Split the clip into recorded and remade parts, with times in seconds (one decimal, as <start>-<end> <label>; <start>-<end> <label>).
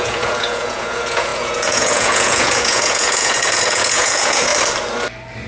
0.0-4.5 remade; 4.5-5.5 recorded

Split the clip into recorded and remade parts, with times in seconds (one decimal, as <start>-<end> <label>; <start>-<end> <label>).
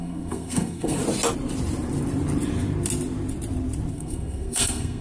0.0-1.0 remade; 1.0-3.9 recorded; 3.9-5.0 remade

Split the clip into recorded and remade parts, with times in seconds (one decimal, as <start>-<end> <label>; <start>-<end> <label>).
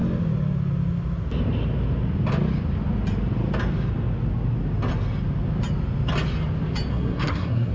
0.0-6.9 recorded; 6.9-7.7 remade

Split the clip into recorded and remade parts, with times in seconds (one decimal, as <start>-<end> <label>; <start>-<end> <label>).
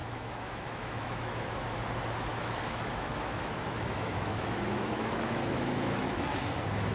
0.0-1.8 remade; 1.8-2.3 recorded; 2.3-6.3 remade; 6.3-6.9 recorded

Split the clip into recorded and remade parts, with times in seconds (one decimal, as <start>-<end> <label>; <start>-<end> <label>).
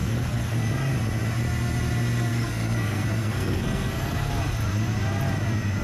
0.0-0.7 remade; 0.7-2.3 recorded; 2.3-4.3 remade; 4.3-5.8 recorded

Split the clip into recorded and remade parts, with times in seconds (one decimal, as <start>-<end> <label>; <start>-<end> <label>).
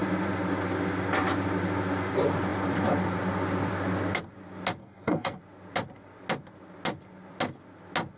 0.0-4.8 recorded; 4.8-5.4 remade; 5.4-8.2 recorded